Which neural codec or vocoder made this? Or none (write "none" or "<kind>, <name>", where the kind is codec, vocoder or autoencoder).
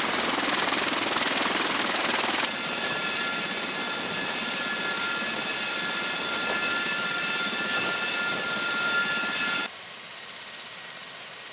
none